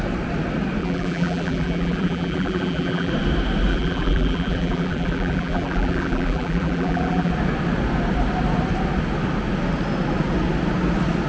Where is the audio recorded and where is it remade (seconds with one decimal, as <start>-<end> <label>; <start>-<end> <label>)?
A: 0.0-0.8 recorded; 0.8-3.1 remade; 3.1-3.7 recorded; 3.7-7.3 remade; 7.3-11.3 recorded